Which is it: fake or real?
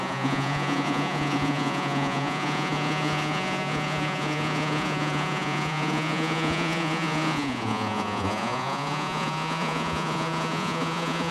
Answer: fake